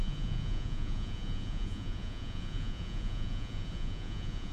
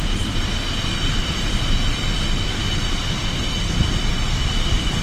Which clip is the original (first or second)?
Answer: second